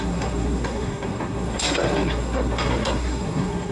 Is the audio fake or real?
fake